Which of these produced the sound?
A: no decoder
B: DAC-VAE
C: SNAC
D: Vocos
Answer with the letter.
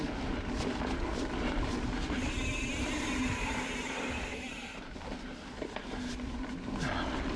A